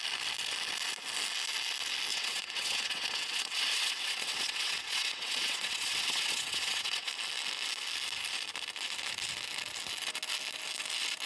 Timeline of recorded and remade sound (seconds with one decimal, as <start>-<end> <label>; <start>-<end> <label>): 0.0-2.1 recorded; 2.1-7.1 remade; 7.1-11.3 recorded